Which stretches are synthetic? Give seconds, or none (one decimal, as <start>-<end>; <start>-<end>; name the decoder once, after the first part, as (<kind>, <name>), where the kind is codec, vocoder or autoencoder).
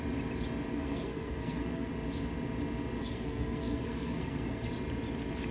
0.7-1.9 (codec, SNAC); 3.0-4.7